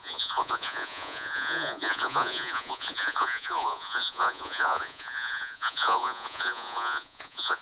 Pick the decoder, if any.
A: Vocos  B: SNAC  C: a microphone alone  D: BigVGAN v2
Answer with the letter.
A